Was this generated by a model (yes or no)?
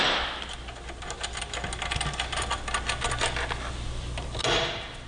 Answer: no